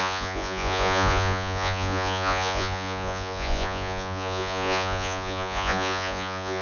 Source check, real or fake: fake